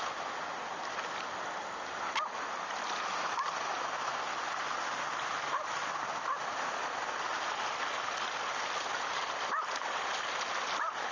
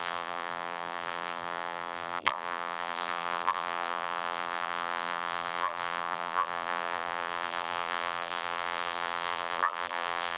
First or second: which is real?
first